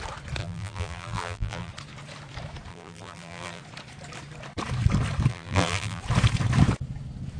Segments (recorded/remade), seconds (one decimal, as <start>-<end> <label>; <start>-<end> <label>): 0.0-0.4 recorded; 0.4-1.7 remade; 1.7-2.7 recorded; 2.7-3.6 remade; 3.6-5.3 recorded; 5.3-6.0 remade; 6.0-7.4 recorded